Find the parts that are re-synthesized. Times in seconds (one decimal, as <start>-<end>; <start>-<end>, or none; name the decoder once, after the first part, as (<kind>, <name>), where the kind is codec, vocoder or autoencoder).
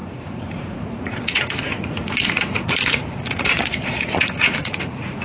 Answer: 0.0-5.2 (vocoder, Vocos)